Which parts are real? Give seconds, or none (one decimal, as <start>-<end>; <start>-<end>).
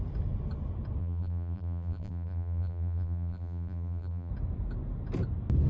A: 0.0-1.0; 4.3-5.7